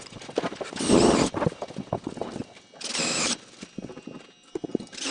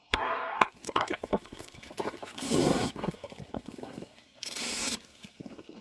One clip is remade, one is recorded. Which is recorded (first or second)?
first